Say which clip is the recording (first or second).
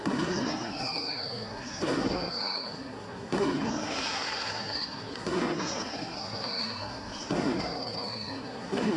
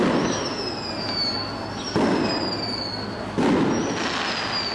second